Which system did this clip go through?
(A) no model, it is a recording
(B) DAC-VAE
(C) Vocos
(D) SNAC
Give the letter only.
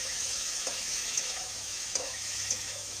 B